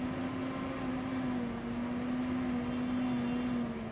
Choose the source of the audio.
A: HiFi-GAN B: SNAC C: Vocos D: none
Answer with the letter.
D